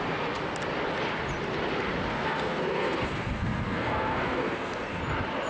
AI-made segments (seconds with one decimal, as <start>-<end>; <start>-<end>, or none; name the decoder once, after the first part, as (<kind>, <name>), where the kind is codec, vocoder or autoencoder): 2.1-5.0 (codec, SNAC)